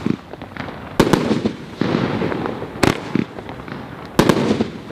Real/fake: real